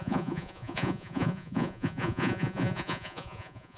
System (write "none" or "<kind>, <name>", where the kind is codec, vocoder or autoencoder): vocoder, Vocos